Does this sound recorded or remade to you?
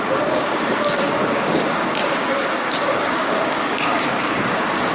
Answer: remade